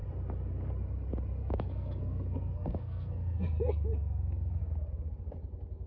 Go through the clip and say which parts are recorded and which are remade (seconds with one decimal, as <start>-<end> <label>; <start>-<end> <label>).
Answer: 0.0-1.4 recorded; 1.4-4.6 remade; 4.6-5.9 recorded